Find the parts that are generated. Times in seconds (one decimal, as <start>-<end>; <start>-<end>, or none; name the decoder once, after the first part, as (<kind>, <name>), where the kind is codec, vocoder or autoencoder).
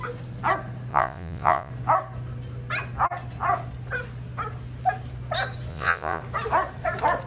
0.9-1.7 (vocoder, Vocos); 5.7-6.2